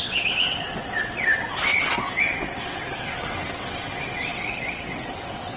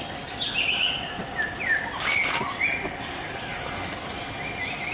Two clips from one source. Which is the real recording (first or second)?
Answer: second